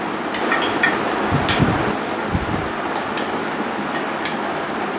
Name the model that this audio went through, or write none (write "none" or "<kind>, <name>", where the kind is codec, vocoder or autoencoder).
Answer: none